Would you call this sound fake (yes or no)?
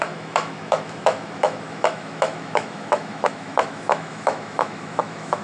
yes